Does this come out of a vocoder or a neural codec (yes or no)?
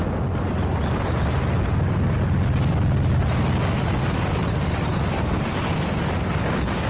no